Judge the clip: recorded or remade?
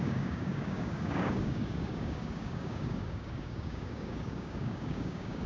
remade